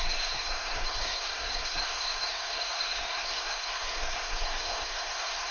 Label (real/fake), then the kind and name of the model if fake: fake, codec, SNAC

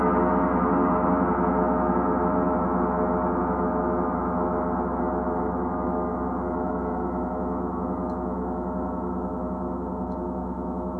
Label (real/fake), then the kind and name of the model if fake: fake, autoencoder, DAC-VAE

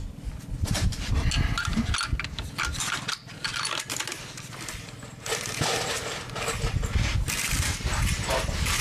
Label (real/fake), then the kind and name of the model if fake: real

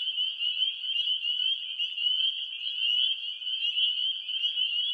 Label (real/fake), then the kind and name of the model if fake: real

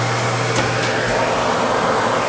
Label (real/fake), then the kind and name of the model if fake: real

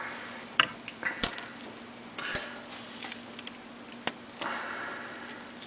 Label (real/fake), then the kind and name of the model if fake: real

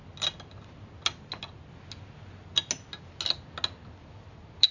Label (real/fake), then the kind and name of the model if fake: real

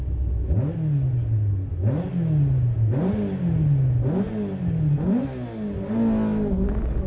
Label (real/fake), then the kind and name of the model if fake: real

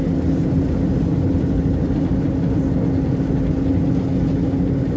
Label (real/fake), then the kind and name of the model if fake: real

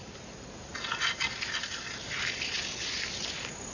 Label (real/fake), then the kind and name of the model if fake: real